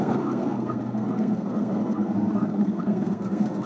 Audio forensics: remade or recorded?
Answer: remade